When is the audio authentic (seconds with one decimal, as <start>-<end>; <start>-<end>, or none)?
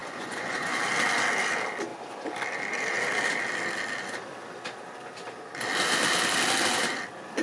0.8-7.4